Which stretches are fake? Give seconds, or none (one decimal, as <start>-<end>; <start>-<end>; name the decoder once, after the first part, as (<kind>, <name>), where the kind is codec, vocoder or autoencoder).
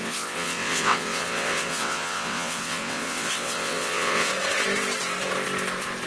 0.0-4.3 (vocoder, WaveNeXt)